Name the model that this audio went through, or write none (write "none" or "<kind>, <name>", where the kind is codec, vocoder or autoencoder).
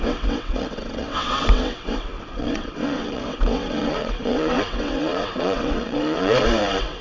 vocoder, WaveNeXt